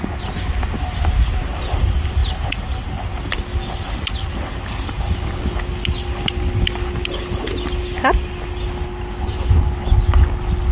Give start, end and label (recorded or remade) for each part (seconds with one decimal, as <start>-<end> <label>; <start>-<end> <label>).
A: 0.0-10.7 recorded